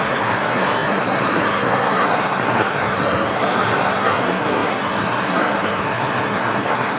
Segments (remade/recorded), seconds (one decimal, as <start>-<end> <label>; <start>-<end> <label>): 0.0-7.0 remade